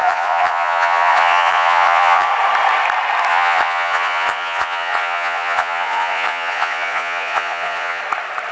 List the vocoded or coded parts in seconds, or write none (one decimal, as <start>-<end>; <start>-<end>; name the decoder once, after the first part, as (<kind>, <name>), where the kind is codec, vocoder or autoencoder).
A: 0.0-2.3 (vocoder, Vocos); 3.3-8.0